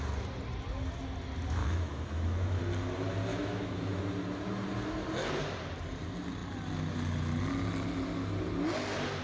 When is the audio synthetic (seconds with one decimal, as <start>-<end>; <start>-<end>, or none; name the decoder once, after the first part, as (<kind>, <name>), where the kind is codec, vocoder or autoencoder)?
1.6-2.6 (autoencoder, DAC-VAE); 3.3-4.0

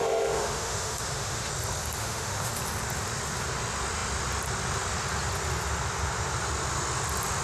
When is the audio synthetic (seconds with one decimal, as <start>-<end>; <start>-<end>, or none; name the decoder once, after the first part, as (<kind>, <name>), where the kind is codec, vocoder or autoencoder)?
0.0-1.5 (autoencoder, DAC-VAE); 2.0-2.5

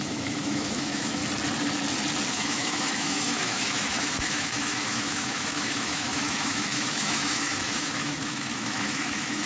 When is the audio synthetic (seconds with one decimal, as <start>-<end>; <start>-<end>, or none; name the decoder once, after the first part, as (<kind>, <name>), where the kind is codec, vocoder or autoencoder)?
0.0-1.2 (autoencoder, DAC-VAE); 2.3-9.5